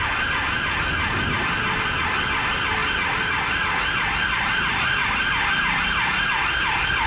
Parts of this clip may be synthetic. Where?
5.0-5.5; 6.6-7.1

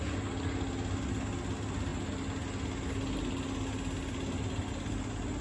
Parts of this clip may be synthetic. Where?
none

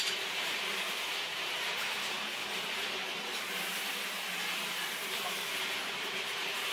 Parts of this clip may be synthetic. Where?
0.0-2.3; 5.1-6.7

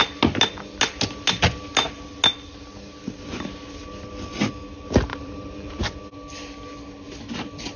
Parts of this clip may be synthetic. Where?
5.1-5.8

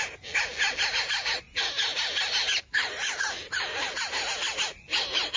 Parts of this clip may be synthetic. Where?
none

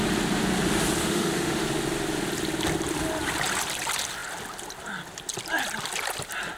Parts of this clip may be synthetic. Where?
1.0-1.6

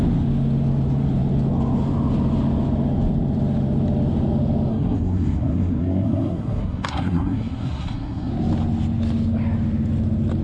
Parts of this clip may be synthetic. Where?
4.7-8.3